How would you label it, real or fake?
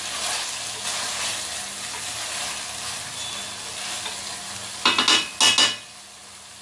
real